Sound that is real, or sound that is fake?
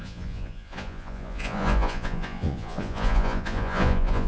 fake